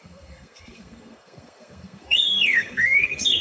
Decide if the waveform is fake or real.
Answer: fake